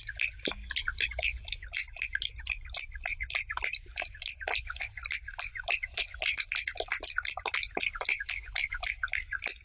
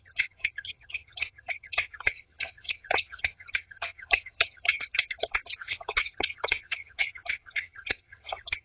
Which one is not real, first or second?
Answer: second